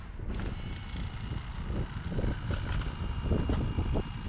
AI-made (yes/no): no